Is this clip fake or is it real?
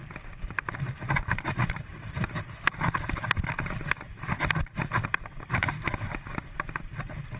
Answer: real